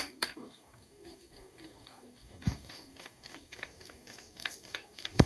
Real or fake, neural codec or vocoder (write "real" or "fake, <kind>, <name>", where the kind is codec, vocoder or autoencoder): fake, codec, DAC